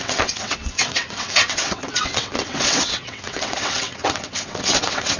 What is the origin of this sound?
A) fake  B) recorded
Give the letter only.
A